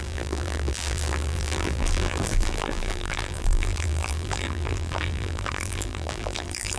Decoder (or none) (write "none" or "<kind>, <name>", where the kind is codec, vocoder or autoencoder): vocoder, BigVGAN v2